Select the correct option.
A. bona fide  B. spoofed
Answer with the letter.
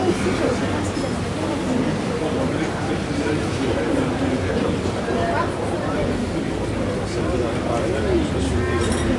A